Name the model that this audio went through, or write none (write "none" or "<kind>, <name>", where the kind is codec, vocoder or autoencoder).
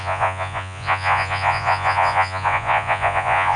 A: vocoder, Vocos